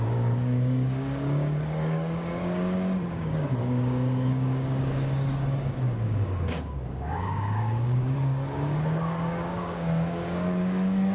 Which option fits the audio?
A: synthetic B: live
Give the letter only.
A